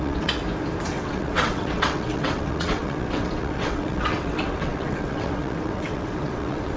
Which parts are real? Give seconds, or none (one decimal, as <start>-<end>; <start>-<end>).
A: 0.4-0.9